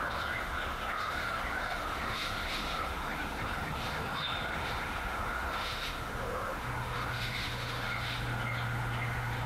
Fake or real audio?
fake